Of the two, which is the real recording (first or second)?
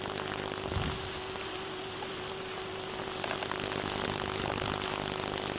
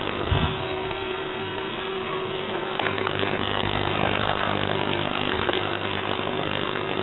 first